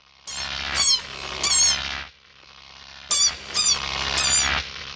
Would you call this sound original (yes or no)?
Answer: yes